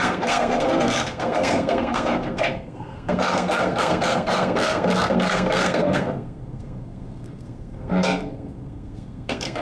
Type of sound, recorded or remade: remade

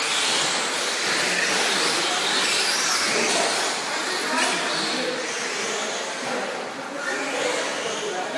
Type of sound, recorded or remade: recorded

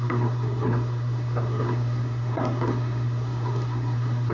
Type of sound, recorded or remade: remade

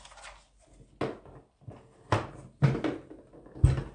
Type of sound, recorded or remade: recorded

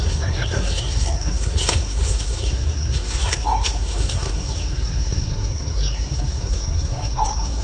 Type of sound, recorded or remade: remade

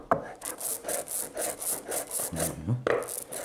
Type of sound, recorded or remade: recorded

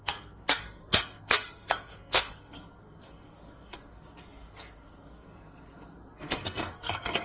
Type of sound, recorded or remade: remade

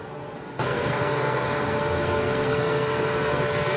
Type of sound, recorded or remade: remade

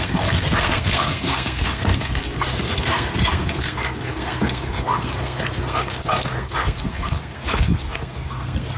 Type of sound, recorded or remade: remade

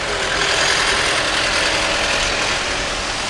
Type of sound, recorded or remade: recorded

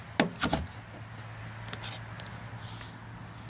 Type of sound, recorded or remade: recorded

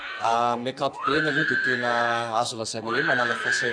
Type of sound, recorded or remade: remade